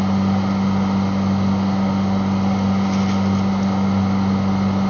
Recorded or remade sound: recorded